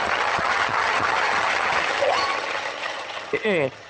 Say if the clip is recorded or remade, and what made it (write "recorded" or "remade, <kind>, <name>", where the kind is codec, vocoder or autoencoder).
remade, vocoder, HiFi-GAN